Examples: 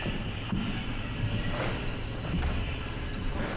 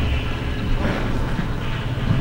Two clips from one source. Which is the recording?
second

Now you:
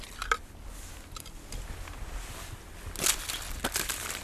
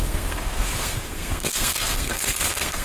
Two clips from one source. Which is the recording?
first